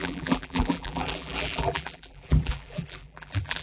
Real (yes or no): no